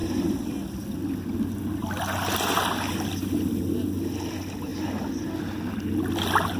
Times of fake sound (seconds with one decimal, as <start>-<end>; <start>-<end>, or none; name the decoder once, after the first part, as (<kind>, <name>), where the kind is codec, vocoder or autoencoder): none